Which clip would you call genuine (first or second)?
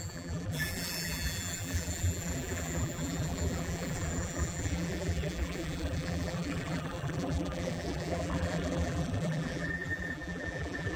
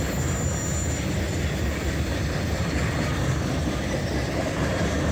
second